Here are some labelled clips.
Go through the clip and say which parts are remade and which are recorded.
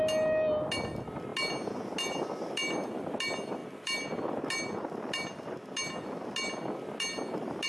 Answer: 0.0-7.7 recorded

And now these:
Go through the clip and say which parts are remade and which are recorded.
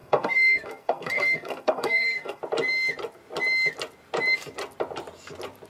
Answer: 0.0-2.4 remade; 2.4-5.7 recorded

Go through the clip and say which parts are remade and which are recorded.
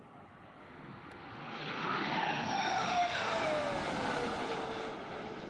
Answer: 0.0-0.6 recorded; 0.6-3.3 remade; 3.3-5.5 recorded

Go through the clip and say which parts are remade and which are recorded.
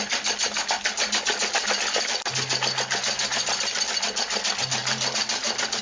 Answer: 0.0-5.8 recorded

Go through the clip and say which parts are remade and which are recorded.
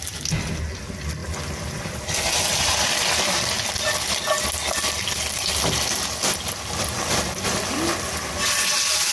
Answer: 0.0-9.1 recorded